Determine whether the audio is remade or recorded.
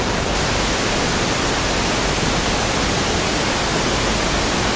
remade